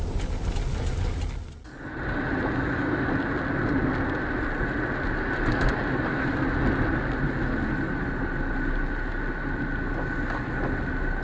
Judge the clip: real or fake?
real